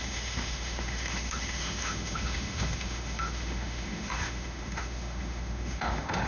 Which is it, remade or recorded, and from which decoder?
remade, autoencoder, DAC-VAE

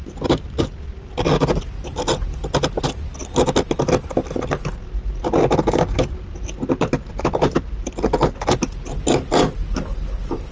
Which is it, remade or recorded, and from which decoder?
recorded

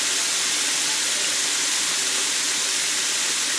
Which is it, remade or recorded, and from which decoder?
recorded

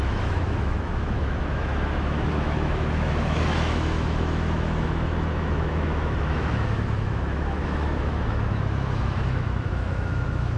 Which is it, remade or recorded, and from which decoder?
remade, autoencoder, DAC-VAE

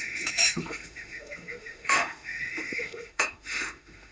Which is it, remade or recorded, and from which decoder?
remade, autoencoder, DAC-VAE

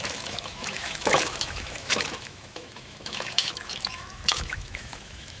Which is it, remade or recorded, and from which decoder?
remade, autoencoder, DAC-VAE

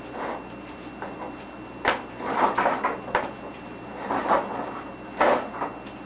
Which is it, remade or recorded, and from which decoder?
recorded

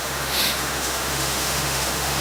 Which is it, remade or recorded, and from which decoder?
remade, autoencoder, DAC-VAE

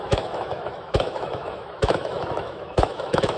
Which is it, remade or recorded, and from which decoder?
remade, autoencoder, DAC-VAE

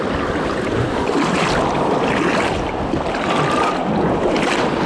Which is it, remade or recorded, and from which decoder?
recorded